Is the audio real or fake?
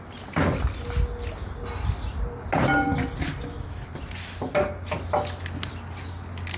real